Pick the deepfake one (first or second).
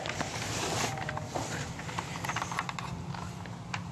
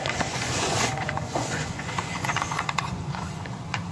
second